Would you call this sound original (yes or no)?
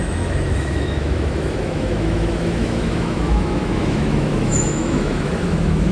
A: no